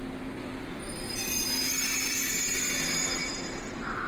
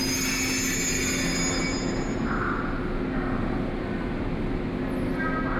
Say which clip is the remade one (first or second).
first